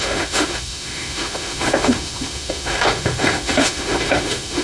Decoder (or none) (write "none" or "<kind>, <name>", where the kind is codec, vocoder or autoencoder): autoencoder, DAC-VAE